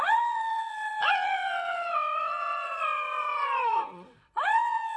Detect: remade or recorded remade